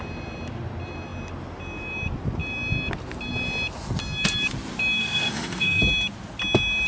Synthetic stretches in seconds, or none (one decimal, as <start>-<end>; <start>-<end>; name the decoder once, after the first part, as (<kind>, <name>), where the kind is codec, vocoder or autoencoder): 5.0-5.8 (autoencoder, DAC-VAE)